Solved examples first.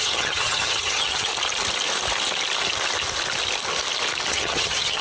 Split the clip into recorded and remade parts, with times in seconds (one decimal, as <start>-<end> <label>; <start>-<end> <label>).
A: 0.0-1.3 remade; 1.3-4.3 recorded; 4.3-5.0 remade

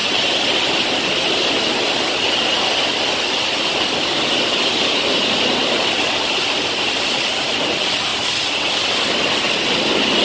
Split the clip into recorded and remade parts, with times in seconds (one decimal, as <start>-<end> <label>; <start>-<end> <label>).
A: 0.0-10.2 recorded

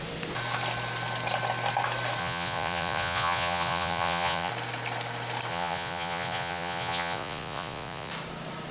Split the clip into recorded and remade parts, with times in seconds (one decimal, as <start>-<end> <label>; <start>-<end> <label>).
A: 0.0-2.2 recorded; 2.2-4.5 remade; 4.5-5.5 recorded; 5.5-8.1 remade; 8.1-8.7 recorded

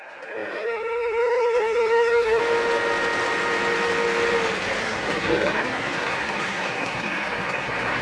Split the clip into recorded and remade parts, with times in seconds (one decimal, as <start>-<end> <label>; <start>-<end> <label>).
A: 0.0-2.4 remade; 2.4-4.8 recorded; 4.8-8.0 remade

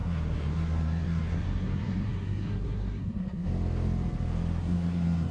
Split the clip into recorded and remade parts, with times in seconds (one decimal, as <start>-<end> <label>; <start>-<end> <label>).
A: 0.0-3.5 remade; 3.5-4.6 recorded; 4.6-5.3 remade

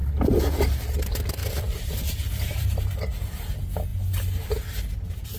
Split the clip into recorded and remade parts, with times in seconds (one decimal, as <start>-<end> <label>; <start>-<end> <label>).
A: 0.0-0.6 remade; 0.6-1.4 recorded; 1.4-3.4 remade; 3.4-5.4 recorded